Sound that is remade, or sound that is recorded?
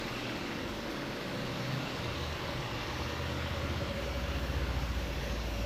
remade